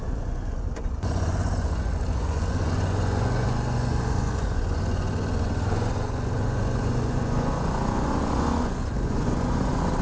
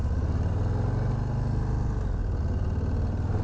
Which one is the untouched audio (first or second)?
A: second